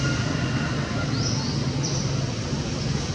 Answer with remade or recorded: recorded